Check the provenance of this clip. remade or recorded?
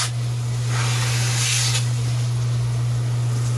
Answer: recorded